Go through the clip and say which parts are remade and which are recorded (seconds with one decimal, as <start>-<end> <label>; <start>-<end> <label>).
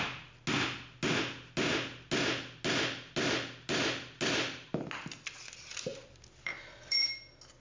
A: 0.0-5.9 recorded; 5.9-7.1 remade; 7.1-7.6 recorded